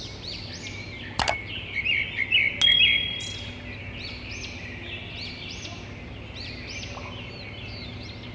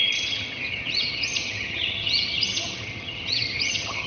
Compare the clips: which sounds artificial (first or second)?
second